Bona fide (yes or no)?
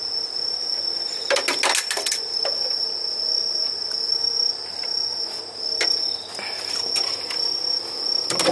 yes